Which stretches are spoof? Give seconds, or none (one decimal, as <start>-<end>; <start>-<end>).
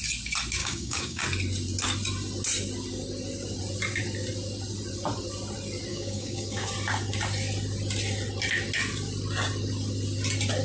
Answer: 0.6-1.2; 5.9-6.7